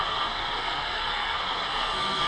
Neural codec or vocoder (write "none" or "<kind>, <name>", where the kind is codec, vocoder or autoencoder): codec, SNAC